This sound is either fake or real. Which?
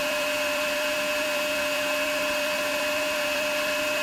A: fake